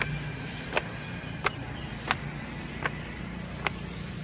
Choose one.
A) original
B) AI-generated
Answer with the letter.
A